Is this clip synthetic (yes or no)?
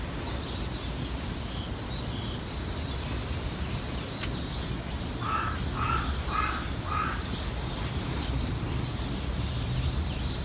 no